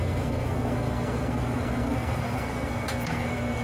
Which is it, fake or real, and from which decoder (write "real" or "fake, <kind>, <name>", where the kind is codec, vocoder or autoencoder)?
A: fake, codec, SNAC